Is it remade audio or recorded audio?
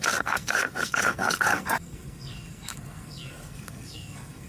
remade